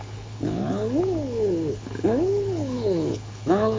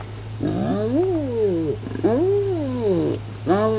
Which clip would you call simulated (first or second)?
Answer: first